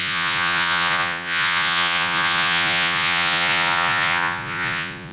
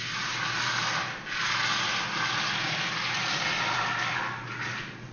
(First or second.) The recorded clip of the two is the second